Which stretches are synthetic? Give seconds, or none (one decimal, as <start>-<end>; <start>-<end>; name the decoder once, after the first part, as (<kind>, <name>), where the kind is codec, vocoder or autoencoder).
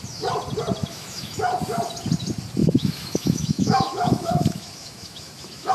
0.8-1.4 (autoencoder, DAC-VAE); 2.6-5.7